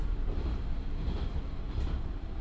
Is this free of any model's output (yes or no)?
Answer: no